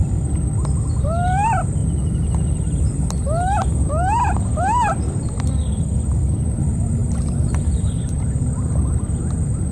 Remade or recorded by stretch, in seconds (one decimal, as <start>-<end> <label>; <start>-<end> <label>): 0.0-9.7 recorded